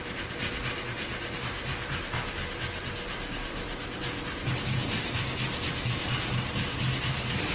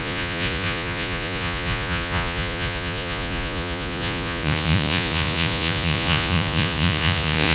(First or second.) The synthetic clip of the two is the second